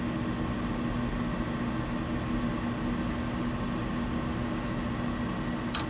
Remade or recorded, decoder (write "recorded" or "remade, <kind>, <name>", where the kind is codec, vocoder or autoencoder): recorded